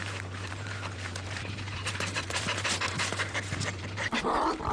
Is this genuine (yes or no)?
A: no